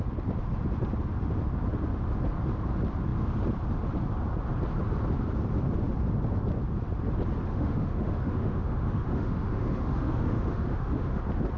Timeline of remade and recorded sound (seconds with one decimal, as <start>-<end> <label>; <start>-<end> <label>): 0.0-7.5 recorded; 7.5-11.2 remade; 11.2-11.6 recorded